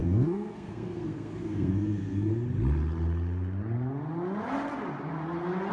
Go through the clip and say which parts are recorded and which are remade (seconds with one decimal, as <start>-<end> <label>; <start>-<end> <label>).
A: 0.0-2.3 remade; 2.3-5.7 recorded